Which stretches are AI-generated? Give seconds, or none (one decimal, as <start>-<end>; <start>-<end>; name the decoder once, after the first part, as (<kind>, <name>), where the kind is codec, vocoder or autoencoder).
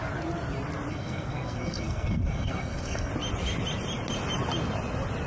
0.9-3.1 (codec, SNAC)